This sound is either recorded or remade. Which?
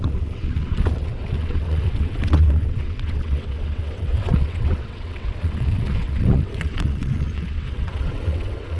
remade